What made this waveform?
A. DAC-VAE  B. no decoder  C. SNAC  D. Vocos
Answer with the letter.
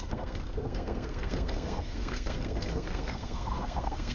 C